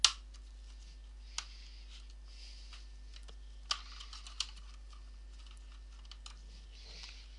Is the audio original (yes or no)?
yes